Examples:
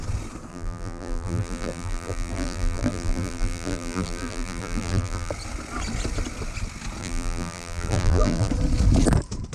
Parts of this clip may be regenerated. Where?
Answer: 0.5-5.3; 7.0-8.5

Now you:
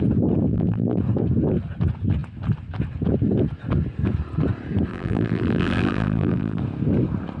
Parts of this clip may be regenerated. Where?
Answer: 0.5-1.0; 4.9-6.6

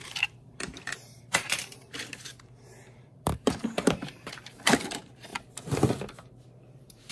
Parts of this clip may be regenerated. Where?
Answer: 0.0-5.3; 5.9-7.1

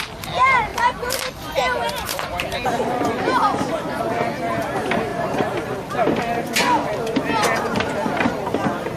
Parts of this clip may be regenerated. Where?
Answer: 0.7-4.0; 5.1-5.9

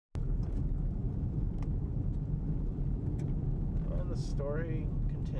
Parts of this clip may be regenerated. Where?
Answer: 1.0-2.9

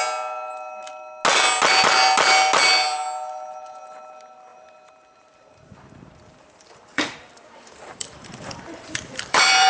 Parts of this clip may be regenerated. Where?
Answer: 4.5-9.7